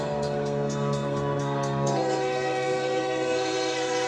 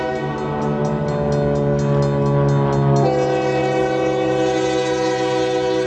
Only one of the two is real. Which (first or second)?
second